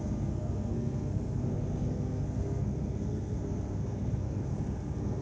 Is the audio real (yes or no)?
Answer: no